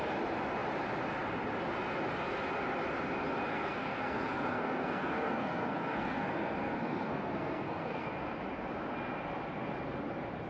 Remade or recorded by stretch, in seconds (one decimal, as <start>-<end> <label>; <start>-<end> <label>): 0.0-3.5 recorded; 3.5-8.1 remade; 8.1-10.5 recorded

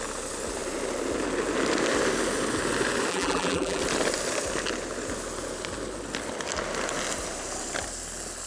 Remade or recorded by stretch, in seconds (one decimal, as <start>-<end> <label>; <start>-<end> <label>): 0.0-3.1 recorded; 3.1-3.8 remade; 3.8-8.5 recorded

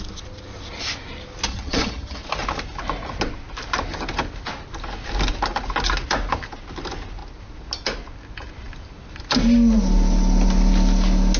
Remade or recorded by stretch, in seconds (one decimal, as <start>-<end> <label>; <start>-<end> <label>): 0.0-1.5 recorded; 1.5-2.2 remade; 2.2-11.4 recorded

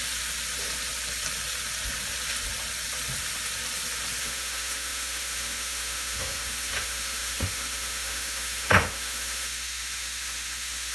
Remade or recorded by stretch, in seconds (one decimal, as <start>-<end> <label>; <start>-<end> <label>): 0.0-4.2 recorded; 4.2-10.9 remade